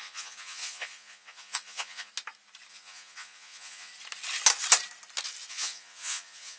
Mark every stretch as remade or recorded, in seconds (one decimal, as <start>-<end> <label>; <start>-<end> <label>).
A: 0.0-2.1 remade; 2.1-2.7 recorded; 2.7-3.9 remade; 3.9-5.5 recorded; 5.5-6.6 remade